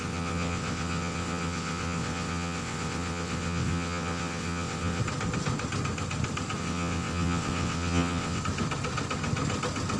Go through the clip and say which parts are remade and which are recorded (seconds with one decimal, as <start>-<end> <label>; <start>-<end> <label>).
0.0-5.0 remade; 5.0-6.6 recorded; 6.6-8.4 remade; 8.4-10.0 recorded